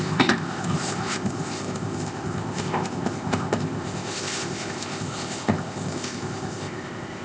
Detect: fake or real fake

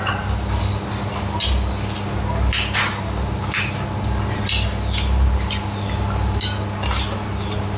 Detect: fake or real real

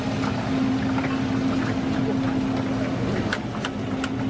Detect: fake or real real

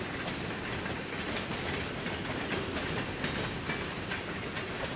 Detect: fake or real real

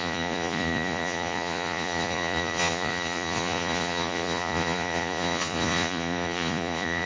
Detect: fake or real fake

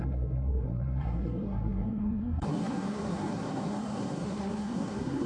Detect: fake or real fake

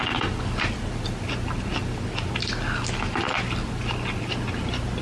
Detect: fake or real real